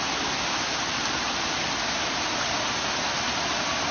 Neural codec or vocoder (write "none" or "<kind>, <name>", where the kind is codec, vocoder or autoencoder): none